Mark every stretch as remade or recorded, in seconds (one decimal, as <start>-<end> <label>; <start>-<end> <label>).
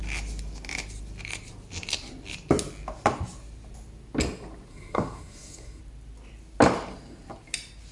0.0-4.7 recorded; 4.7-5.8 remade; 5.8-7.9 recorded